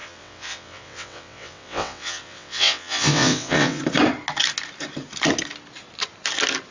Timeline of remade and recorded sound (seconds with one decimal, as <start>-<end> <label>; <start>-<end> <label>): 0.0-3.8 remade; 3.8-6.7 recorded